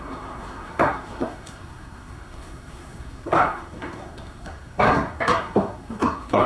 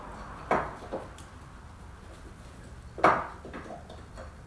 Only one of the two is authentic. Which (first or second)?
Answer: second